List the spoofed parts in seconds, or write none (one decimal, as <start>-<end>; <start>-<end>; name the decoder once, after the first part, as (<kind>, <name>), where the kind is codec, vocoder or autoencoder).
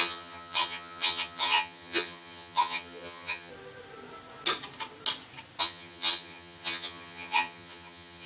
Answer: 0.0-3.5 (vocoder, HiFi-GAN); 5.6-8.3